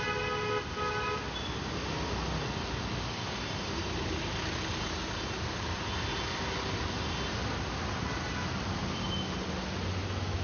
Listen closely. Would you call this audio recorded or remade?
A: recorded